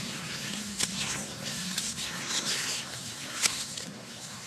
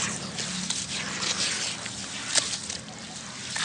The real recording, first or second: second